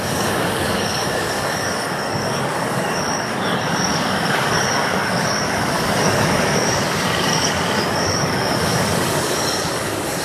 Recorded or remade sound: remade